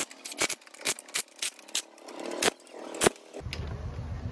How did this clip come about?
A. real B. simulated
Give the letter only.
A